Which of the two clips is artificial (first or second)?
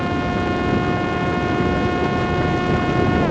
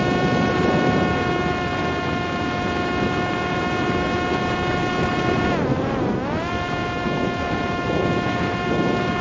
second